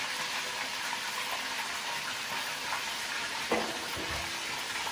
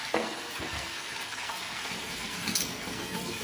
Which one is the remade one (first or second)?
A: second